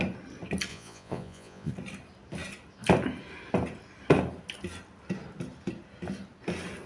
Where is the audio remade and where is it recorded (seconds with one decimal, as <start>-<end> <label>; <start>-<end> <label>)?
0.0-0.7 recorded; 0.7-1.7 remade; 1.7-6.9 recorded